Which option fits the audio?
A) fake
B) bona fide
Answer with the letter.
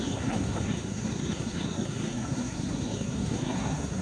A